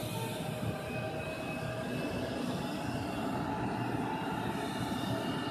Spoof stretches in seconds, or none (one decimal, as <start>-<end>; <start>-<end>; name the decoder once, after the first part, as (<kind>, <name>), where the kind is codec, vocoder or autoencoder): none